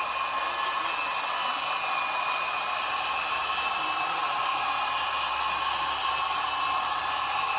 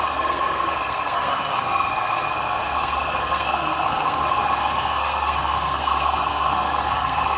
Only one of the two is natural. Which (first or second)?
first